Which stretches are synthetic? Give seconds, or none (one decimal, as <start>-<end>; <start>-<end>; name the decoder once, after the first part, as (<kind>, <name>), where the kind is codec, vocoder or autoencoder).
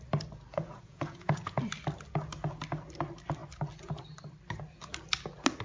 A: 0.5-1.6 (vocoder, Vocos)